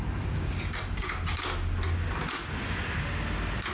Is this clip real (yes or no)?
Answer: yes